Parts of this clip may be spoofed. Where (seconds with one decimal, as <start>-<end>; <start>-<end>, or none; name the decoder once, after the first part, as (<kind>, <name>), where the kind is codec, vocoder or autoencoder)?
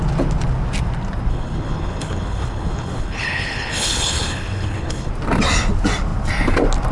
1.3-5.1 (codec, HILCodec)